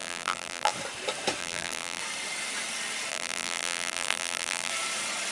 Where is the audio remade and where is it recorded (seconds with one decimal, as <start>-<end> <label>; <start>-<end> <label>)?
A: 0.0-0.7 remade; 0.7-1.4 recorded; 1.4-2.0 remade; 2.0-3.1 recorded; 3.1-4.7 remade; 4.7-5.3 recorded